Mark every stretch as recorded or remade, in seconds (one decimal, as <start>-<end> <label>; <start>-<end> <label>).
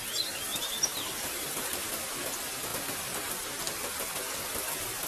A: 0.0-0.5 recorded; 0.5-1.9 remade; 1.9-5.1 recorded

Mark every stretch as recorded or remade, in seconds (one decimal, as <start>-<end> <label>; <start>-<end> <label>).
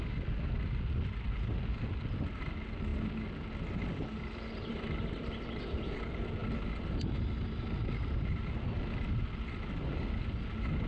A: 0.0-10.9 recorded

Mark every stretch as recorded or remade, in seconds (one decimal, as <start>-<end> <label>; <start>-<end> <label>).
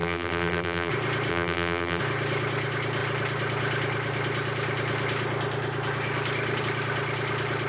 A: 0.0-0.9 remade; 0.9-1.3 recorded; 1.3-2.0 remade; 2.0-7.7 recorded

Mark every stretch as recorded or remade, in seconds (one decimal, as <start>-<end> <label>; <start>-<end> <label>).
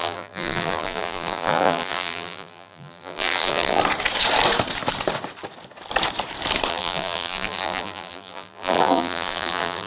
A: 0.0-3.8 remade; 3.8-6.7 recorded; 6.7-9.9 remade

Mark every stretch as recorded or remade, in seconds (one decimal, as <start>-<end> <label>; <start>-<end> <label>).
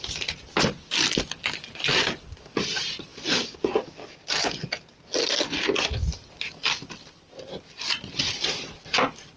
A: 0.0-9.4 recorded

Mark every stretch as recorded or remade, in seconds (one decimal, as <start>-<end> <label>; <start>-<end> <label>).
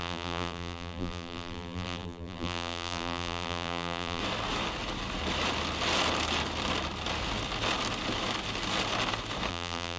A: 0.0-4.2 remade; 4.2-9.5 recorded; 9.5-10.0 remade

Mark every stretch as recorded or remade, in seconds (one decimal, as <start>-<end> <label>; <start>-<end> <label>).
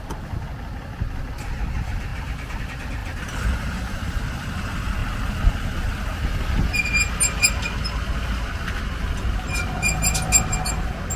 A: 0.0-3.0 recorded; 3.0-4.2 remade; 4.2-11.2 recorded